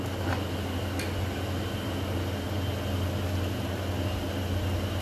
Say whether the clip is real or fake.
real